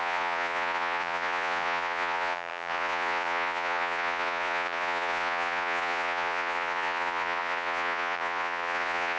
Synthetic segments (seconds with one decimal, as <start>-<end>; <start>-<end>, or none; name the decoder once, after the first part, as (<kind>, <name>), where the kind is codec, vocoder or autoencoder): 0.0-9.2 (vocoder, Vocos)